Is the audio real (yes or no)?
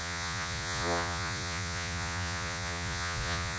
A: no